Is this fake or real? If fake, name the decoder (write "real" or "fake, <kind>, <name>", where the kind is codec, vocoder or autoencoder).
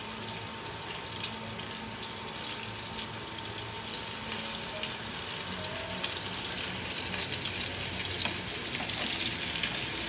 real